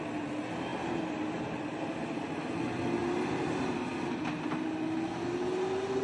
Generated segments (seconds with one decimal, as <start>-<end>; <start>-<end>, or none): 0.7-1.4